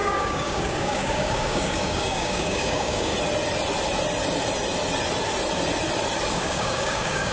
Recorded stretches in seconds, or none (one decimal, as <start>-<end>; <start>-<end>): 3.1-6.3